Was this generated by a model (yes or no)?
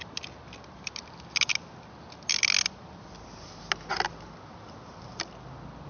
no